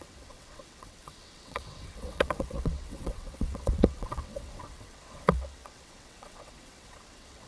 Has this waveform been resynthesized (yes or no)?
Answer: yes